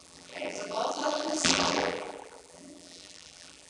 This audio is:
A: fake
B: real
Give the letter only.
A